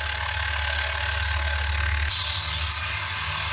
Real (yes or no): yes